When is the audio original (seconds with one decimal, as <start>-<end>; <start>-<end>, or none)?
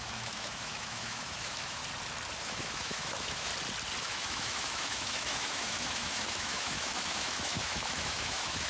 1.8-2.4; 3.5-4.0